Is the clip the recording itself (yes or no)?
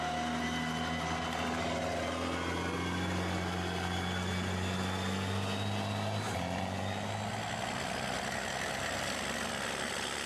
yes